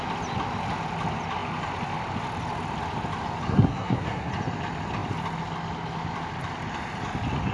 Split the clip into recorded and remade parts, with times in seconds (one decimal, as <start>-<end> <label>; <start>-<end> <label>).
0.0-3.5 recorded; 3.5-4.3 remade; 4.3-7.5 recorded